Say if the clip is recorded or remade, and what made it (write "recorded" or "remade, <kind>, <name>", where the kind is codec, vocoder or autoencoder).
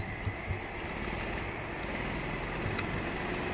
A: recorded